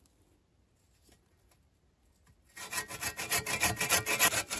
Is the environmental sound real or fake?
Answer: real